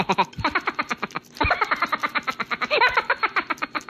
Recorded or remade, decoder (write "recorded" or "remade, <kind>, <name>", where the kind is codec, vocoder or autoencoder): recorded